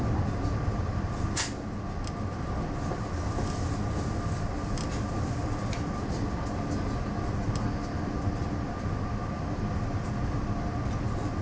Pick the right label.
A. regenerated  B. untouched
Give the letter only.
B